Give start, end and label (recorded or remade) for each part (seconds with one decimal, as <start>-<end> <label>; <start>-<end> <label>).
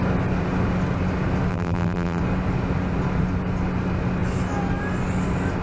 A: 0.0-1.5 recorded; 1.5-2.2 remade; 2.2-5.6 recorded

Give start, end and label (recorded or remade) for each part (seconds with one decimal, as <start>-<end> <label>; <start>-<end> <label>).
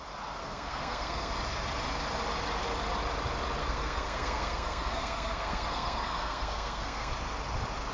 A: 0.0-0.4 recorded; 0.4-1.3 remade; 1.3-3.6 recorded; 3.6-7.1 remade; 7.1-7.9 recorded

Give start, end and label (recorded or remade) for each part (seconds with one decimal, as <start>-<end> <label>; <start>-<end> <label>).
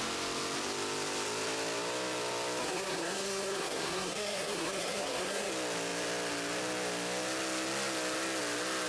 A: 0.0-2.6 recorded; 2.6-5.5 remade; 5.5-8.9 recorded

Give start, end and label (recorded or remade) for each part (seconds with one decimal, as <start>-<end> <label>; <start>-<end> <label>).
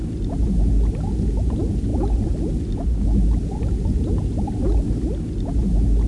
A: 0.0-6.1 recorded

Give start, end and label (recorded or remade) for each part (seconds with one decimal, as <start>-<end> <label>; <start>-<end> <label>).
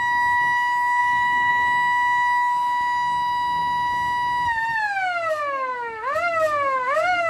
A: 0.0-1.0 recorded; 1.0-1.5 remade; 1.5-5.7 recorded; 5.7-7.3 remade